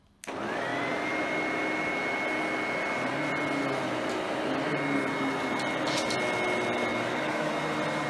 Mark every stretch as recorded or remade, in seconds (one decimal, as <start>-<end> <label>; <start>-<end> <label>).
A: 0.0-6.9 recorded; 6.9-7.5 remade; 7.5-8.1 recorded